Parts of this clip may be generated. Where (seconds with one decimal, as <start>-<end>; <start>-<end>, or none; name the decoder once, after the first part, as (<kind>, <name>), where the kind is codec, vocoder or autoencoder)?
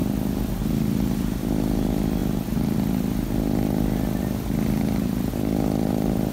none